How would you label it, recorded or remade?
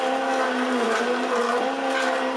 recorded